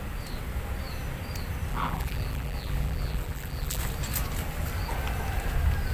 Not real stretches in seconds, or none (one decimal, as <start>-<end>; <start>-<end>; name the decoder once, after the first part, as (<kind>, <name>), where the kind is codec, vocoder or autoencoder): 1.7-3.8 (vocoder, BigVGAN v2)